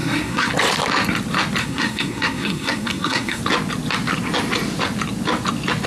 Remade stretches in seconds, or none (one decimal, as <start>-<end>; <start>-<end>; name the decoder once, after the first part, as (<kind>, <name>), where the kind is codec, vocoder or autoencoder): 0.0-0.5 (codec, SNAC); 1.6-3.4